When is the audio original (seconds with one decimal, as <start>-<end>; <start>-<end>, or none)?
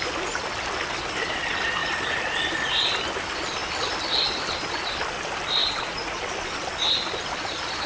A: 0.0-5.6; 6.2-7.9